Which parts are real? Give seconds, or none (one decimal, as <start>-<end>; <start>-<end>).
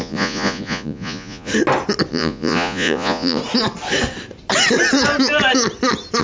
1.5-2.1; 3.4-6.2